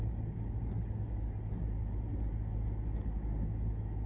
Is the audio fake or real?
real